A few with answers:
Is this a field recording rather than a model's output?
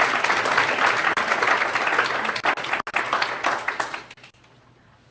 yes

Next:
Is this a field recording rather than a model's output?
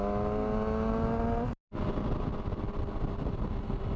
yes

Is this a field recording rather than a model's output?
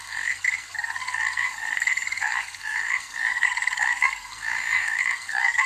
no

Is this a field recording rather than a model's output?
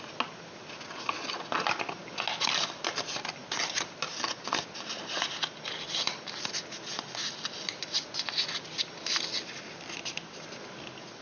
yes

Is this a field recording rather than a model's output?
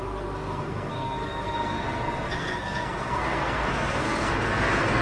no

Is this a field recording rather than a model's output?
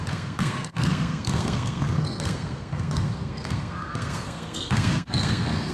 no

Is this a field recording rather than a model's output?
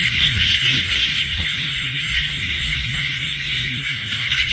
no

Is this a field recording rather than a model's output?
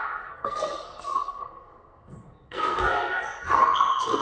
no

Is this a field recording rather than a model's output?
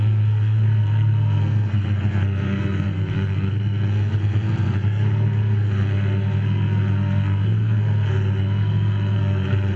no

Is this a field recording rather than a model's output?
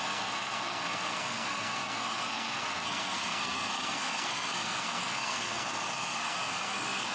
no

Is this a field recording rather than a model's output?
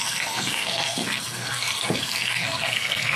no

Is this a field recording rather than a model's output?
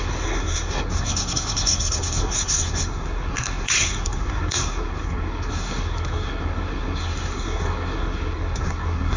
no